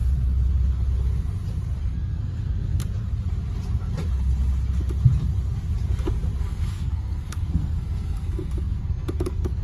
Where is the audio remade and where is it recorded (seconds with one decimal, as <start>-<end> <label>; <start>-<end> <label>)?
0.0-1.8 recorded; 1.8-2.8 remade; 2.8-6.4 recorded; 6.4-9.6 remade